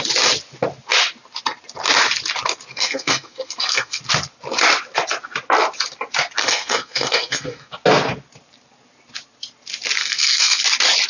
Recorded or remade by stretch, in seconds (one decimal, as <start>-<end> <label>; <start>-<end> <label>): 0.0-2.7 recorded; 2.7-4.0 remade; 4.0-6.4 recorded; 6.4-7.7 remade; 7.7-10.0 recorded; 10.0-10.6 remade; 10.6-11.1 recorded